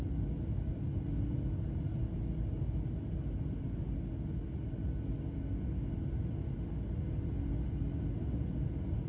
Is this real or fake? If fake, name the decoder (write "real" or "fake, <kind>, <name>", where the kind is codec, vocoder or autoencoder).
real